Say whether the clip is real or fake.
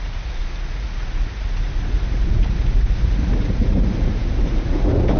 fake